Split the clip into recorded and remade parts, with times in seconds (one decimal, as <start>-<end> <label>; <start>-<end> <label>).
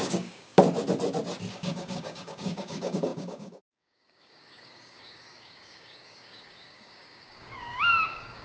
0.0-0.5 remade; 0.5-1.5 recorded; 1.5-8.4 remade